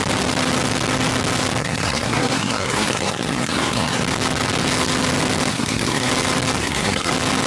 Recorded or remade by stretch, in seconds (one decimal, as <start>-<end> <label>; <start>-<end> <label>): 0.0-1.6 recorded; 1.6-4.0 remade; 4.0-5.5 recorded; 5.5-6.1 remade; 6.1-6.6 recorded; 6.6-7.1 remade; 7.1-7.5 recorded